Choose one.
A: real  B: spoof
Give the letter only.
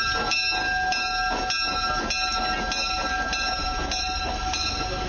A